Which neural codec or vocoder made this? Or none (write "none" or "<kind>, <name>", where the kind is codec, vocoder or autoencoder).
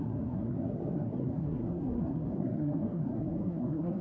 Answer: codec, SNAC